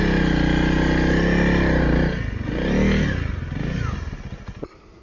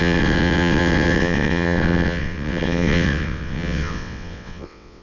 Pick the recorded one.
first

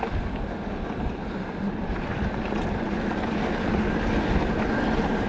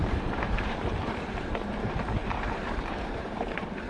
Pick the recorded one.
first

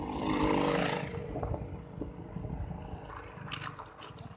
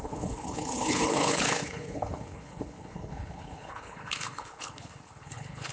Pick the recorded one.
first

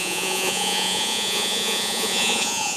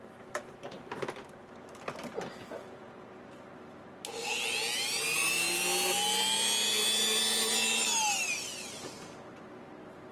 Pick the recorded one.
second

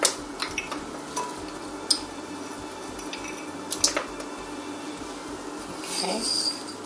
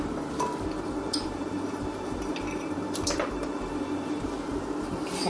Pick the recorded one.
first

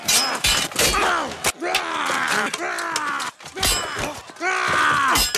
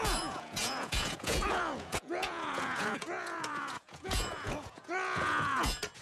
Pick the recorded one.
first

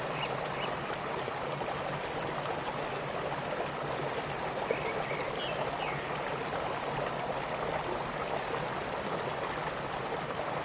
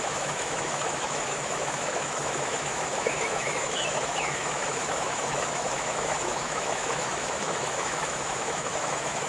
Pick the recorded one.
first